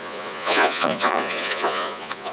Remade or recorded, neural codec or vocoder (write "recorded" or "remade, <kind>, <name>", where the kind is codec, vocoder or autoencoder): remade, vocoder, Vocos